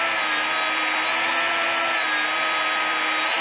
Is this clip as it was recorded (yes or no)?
yes